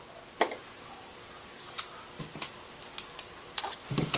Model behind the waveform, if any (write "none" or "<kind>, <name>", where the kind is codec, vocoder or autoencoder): none